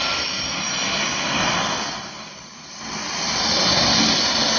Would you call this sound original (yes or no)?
yes